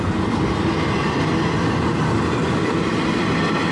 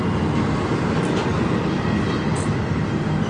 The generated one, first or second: first